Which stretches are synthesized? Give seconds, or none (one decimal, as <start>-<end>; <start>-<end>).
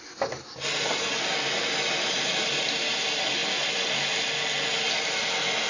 none